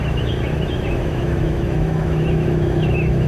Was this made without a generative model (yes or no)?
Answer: no